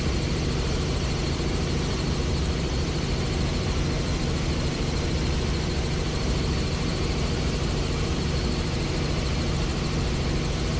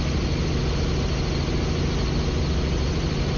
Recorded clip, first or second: second